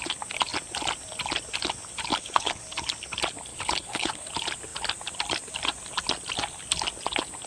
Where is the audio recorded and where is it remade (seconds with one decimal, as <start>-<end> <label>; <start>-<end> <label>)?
0.0-2.1 recorded; 2.1-2.6 remade; 2.6-3.5 recorded; 3.5-4.3 remade; 4.3-7.5 recorded